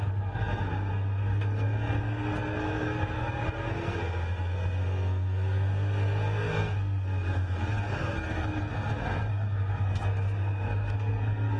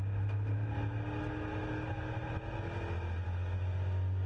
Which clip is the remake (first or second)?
first